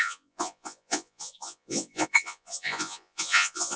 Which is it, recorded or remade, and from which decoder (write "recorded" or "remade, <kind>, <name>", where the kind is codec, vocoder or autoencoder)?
remade, vocoder, Vocos